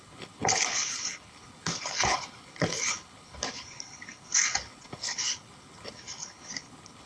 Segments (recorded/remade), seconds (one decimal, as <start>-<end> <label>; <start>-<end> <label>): 0.0-7.1 remade